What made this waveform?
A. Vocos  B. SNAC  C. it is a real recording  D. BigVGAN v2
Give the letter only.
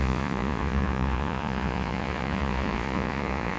A